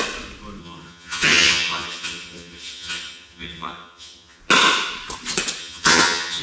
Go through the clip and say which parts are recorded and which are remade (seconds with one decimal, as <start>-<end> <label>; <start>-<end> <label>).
0.0-0.6 recorded; 0.6-4.4 remade; 4.4-5.6 recorded; 5.6-6.4 remade